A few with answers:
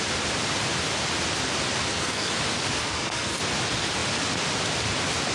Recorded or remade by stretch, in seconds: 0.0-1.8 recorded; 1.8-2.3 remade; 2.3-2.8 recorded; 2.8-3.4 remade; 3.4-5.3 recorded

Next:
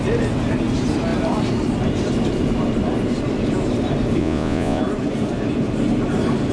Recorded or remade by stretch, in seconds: 0.0-4.2 recorded; 4.2-4.8 remade; 4.8-6.5 recorded